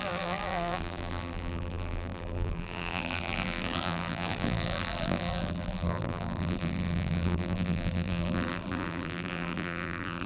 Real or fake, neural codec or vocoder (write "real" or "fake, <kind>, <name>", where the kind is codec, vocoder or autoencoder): fake, vocoder, BigVGAN v2